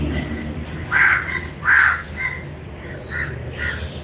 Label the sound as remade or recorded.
recorded